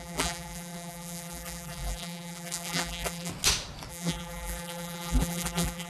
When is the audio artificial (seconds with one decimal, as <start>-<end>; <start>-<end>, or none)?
0.0-3.3; 3.9-5.9